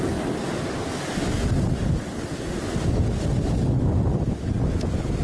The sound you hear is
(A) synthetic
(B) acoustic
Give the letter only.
B